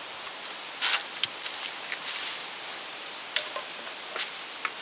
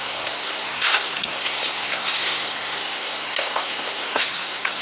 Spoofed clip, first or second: second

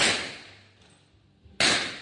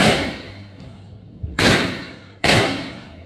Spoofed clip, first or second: second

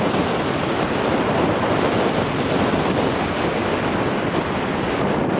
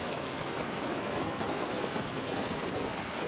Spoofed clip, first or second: second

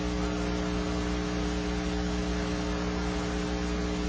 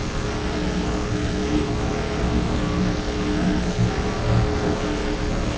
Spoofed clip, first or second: second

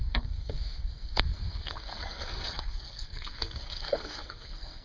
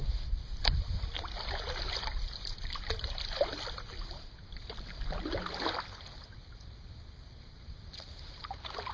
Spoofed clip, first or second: first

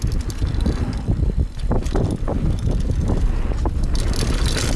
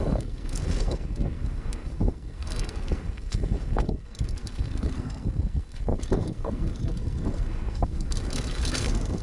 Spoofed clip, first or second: second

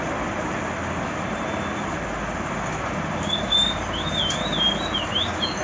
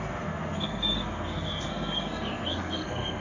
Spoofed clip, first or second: second